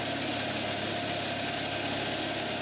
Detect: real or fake real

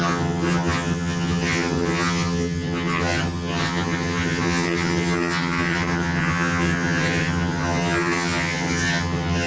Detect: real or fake fake